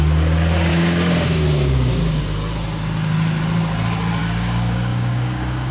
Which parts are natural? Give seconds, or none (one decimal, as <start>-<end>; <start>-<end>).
0.0-0.7; 2.2-4.2